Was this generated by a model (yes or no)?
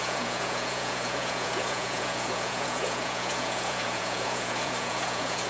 yes